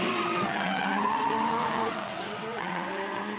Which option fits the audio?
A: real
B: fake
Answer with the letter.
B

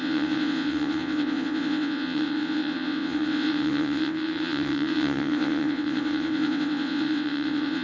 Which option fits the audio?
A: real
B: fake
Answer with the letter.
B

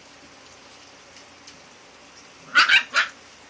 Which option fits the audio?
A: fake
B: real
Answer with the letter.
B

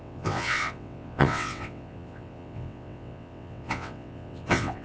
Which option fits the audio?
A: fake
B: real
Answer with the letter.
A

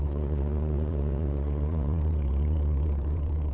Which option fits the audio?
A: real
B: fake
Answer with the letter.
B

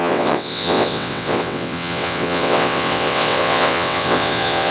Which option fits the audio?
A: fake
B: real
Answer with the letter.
A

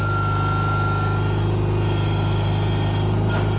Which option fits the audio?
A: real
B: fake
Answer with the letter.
A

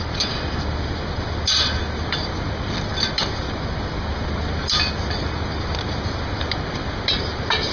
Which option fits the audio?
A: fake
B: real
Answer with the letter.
B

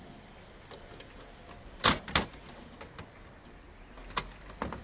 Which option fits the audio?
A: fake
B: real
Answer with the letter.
B